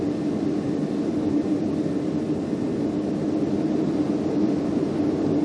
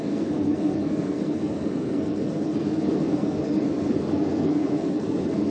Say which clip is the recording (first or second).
first